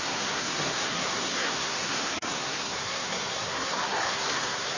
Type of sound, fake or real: fake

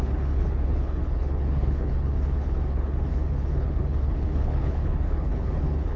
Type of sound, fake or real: fake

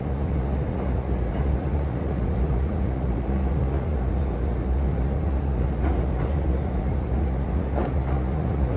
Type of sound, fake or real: fake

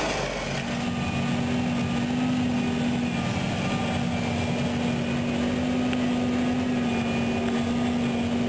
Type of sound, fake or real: real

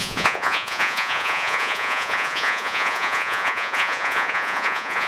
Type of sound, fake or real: fake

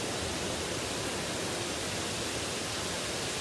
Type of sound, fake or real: real